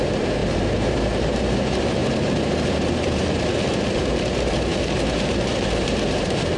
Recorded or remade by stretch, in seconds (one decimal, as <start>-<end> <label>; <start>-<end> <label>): 0.0-6.6 remade